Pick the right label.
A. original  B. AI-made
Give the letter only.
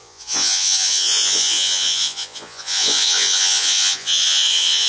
B